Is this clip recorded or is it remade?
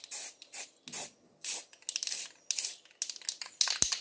recorded